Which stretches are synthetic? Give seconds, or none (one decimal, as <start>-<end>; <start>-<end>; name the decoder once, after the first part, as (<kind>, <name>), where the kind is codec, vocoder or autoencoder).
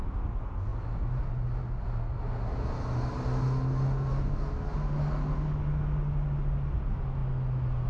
none